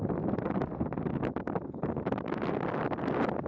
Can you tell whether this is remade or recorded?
recorded